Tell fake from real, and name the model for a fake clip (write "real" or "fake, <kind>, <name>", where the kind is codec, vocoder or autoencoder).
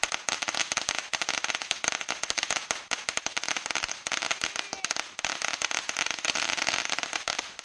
real